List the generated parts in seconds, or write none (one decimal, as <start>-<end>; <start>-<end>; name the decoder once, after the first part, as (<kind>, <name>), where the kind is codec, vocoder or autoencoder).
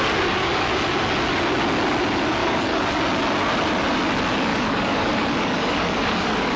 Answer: 2.4-3.0 (codec, DAC); 4.5-6.6